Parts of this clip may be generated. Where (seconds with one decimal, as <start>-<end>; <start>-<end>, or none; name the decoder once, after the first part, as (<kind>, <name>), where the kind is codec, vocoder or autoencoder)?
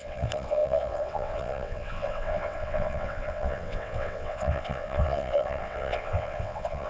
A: 0.0-6.9 (vocoder, WaveNeXt)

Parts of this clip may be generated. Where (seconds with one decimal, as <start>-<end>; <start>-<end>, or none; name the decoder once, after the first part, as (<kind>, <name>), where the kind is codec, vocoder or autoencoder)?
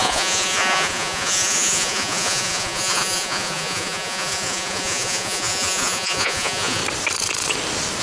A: 0.0-6.8 (vocoder, Vocos)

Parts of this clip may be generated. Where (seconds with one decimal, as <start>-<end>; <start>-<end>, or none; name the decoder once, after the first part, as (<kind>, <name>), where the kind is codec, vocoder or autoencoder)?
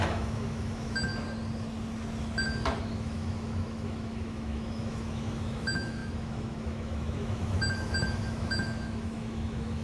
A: 0.0-1.1 (autoencoder, DAC-VAE); 2.8-9.8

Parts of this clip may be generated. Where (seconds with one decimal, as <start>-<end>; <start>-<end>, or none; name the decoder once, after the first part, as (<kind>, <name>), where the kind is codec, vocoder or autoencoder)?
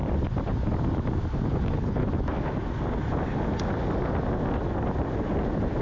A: 1.5-2.0 (codec, HILCodec)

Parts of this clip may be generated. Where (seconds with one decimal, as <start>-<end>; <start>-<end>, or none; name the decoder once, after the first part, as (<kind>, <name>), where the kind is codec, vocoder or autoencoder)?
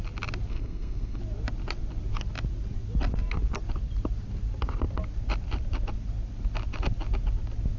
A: 0.5-1.2 (codec, SNAC)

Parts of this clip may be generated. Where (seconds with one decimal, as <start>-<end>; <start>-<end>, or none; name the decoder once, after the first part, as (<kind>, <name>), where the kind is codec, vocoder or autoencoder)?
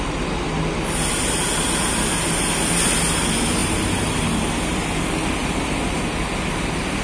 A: none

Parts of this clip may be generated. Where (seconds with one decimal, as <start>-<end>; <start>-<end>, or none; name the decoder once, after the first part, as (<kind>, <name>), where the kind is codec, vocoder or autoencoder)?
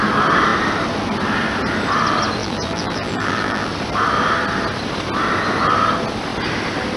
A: 2.4-3.7 (vocoder, BigVGAN v2)